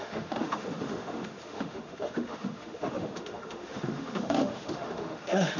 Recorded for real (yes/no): no